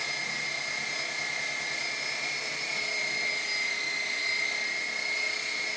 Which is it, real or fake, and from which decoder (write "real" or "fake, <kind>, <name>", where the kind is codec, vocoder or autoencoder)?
real